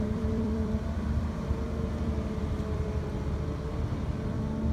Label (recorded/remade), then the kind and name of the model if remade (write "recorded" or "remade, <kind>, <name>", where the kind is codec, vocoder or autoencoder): remade, vocoder, BigVGAN v2